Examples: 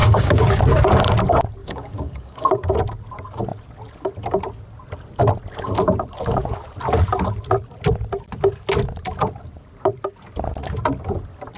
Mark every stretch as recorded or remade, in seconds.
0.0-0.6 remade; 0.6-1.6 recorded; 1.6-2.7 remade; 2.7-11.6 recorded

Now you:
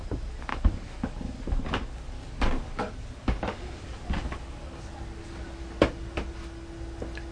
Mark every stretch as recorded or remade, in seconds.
0.0-0.5 recorded; 0.5-4.9 remade; 4.9-7.3 recorded